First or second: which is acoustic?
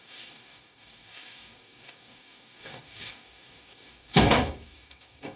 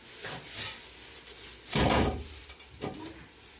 second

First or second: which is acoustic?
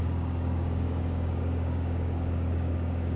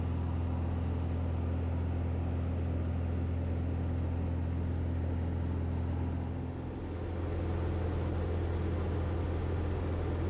second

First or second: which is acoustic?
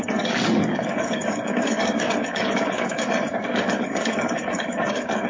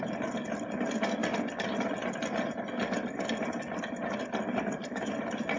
second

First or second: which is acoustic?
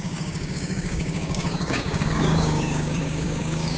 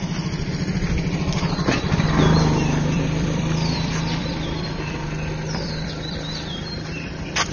second